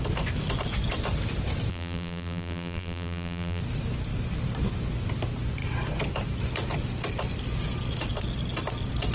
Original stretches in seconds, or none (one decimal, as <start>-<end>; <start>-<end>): 0.0-1.7; 3.6-9.1